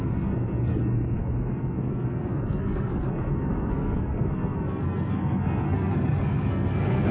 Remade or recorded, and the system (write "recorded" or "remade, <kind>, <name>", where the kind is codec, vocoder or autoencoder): remade, codec, SNAC